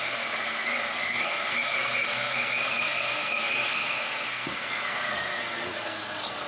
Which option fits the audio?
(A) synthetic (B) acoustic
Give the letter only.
A